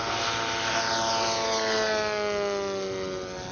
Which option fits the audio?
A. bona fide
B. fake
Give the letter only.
A